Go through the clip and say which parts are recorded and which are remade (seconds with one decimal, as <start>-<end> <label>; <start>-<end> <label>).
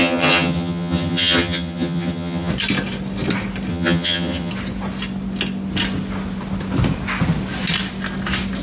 0.0-2.5 remade; 2.5-3.7 recorded; 3.7-4.5 remade; 4.5-8.6 recorded